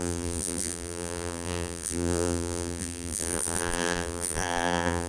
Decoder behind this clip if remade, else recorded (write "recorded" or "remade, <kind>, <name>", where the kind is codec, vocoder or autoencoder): remade, vocoder, BigVGAN v2